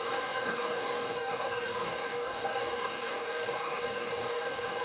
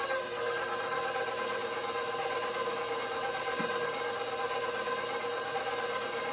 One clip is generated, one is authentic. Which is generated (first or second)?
first